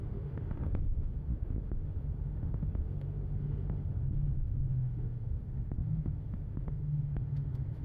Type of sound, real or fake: fake